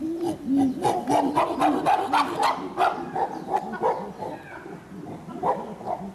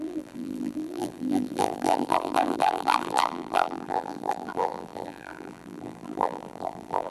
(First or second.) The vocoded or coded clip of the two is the second